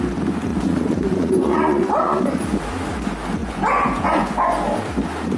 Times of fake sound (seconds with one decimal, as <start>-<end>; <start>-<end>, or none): 0.5-2.3; 3.4-4.5